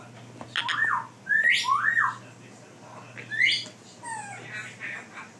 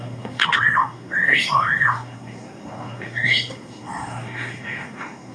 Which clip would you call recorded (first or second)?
first